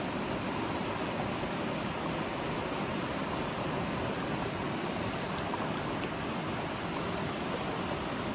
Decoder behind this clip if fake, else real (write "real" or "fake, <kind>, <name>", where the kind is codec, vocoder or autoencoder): real